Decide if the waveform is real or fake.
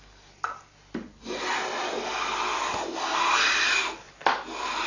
real